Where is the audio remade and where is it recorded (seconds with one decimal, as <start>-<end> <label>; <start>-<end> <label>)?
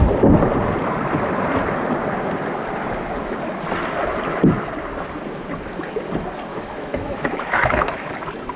0.0-6.5 recorded; 6.5-8.1 remade; 8.1-8.6 recorded